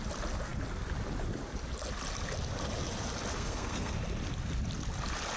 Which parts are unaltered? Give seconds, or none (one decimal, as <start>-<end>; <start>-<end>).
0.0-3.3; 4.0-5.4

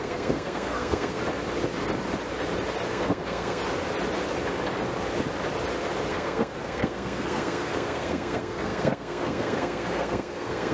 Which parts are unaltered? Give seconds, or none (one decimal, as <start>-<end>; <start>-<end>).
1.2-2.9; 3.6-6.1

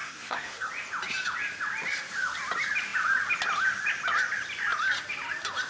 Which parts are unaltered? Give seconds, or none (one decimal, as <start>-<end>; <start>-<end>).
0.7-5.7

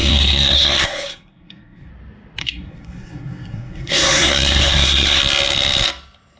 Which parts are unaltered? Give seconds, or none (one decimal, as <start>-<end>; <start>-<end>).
1.9-2.4; 5.2-6.4

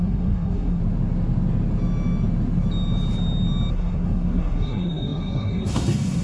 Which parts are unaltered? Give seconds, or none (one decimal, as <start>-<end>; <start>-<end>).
0.8-3.7

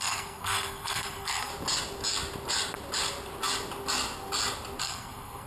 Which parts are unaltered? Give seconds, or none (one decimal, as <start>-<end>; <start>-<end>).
1.5-4.8

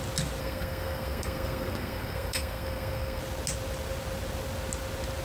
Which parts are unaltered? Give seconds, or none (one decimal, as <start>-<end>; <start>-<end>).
0.0-0.4; 3.2-5.2